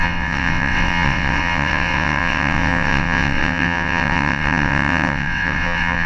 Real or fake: fake